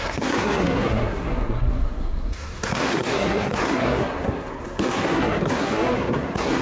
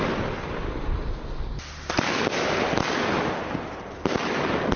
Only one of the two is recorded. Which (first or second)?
second